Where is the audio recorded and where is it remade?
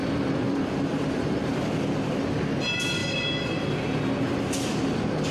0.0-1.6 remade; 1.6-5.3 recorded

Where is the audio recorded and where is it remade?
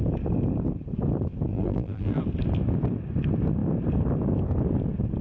0.0-1.5 recorded; 1.5-2.2 remade; 2.2-5.2 recorded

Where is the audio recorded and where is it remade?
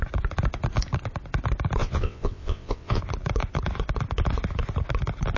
0.0-1.8 recorded; 1.8-3.0 remade; 3.0-5.4 recorded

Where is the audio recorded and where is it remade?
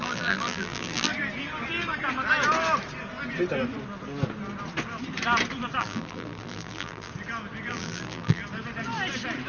0.0-1.1 remade; 1.1-5.8 recorded; 5.8-7.1 remade; 7.1-7.7 recorded; 7.7-8.4 remade; 8.4-9.5 recorded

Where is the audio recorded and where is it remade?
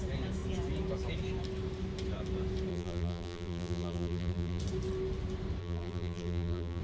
0.0-2.7 recorded; 2.7-4.6 remade; 4.6-5.6 recorded; 5.6-6.8 remade